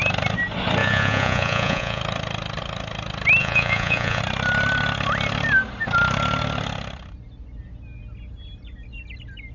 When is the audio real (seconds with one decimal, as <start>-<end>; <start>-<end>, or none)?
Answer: 0.0-0.8; 2.0-3.4; 4.2-9.5